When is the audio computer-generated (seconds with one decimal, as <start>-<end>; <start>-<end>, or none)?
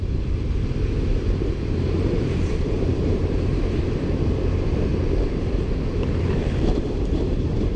0.0-4.9; 6.2-7.8